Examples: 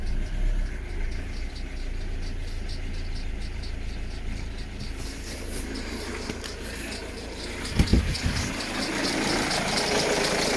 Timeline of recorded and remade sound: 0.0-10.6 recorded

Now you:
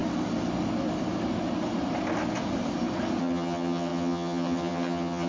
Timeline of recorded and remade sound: 0.0-3.2 recorded; 3.2-5.3 remade

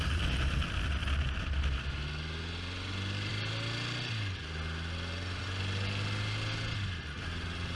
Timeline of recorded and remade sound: 0.0-7.8 recorded

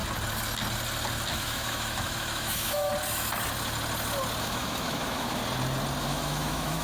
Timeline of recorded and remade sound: 0.0-1.3 recorded; 1.3-2.9 remade; 2.9-4.4 recorded; 4.4-5.4 remade; 5.4-6.0 recorded; 6.0-6.8 remade

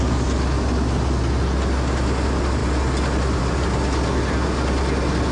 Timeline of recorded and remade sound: 0.0-5.3 recorded

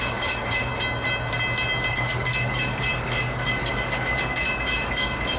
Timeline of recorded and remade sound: 0.0-0.7 remade; 0.7-1.9 recorded; 1.9-5.4 remade

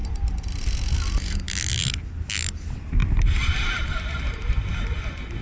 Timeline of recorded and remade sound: 0.0-3.0 recorded; 3.0-4.6 remade; 4.6-5.4 recorded

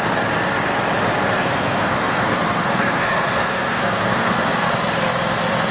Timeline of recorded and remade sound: 0.0-1.3 recorded; 1.3-4.7 remade; 4.7-5.7 recorded